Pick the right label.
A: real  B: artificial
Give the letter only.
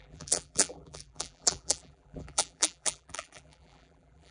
B